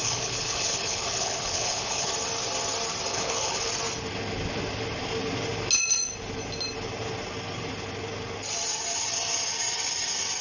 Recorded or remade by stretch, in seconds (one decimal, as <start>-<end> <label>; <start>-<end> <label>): 0.0-2.1 remade; 2.1-3.1 recorded; 3.1-3.7 remade; 3.7-10.4 recorded